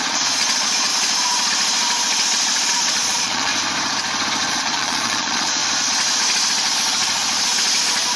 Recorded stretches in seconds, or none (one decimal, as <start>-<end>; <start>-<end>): 0.9-2.7; 3.5-4.5; 5.6-8.2